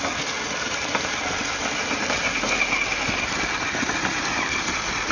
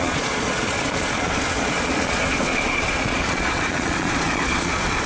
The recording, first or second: first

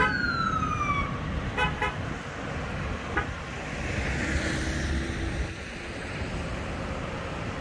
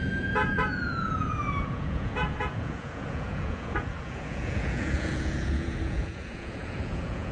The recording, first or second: first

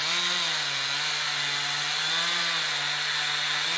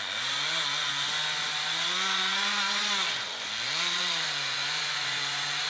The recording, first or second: first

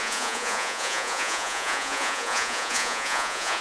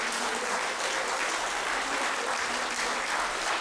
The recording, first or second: second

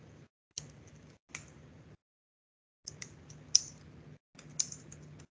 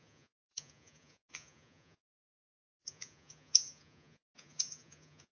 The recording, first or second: first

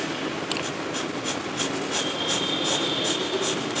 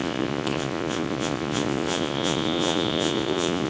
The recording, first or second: first